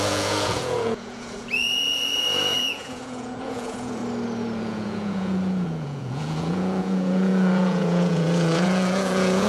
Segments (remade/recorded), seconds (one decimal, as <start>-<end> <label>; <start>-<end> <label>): 0.0-4.0 remade; 4.0-4.6 recorded; 4.6-9.5 remade